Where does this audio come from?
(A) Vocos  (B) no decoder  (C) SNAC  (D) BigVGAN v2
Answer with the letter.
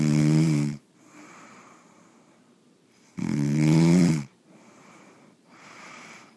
D